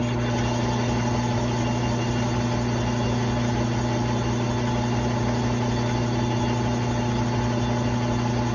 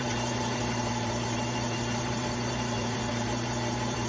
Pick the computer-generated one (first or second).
second